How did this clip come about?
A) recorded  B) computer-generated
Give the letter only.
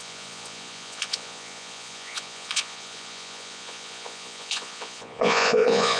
B